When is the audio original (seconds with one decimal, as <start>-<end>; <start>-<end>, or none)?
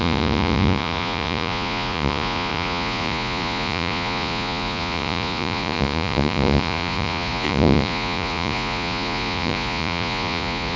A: none